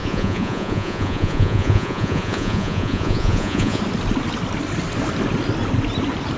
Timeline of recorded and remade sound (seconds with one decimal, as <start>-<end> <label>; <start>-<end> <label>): 0.0-3.8 remade; 3.8-6.4 recorded